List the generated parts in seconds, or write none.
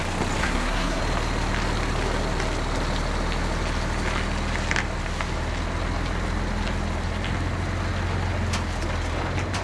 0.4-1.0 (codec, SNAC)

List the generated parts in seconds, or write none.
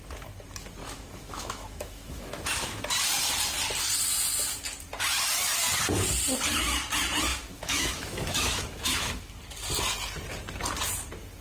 0.8-2.4 (autoencoder, DAC-VAE); 7.3-9.4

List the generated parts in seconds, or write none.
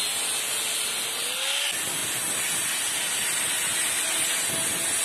none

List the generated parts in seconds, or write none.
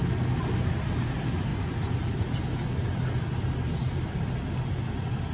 1.5-2.4 (vocoder, BigVGAN v2)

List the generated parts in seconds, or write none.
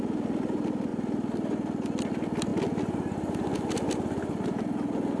none